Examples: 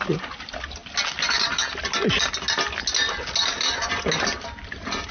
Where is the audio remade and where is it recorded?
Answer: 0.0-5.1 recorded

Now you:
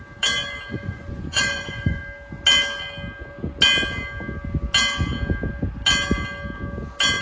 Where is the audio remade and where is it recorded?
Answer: 0.0-0.7 recorded; 0.7-2.0 remade; 2.0-7.2 recorded

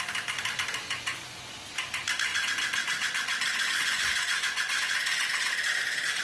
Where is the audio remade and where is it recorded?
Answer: 0.0-0.8 recorded; 0.8-1.6 remade; 1.6-2.3 recorded; 2.3-6.2 remade

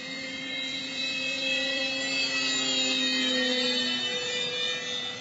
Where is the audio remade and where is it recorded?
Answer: 0.0-1.8 remade; 1.8-5.2 recorded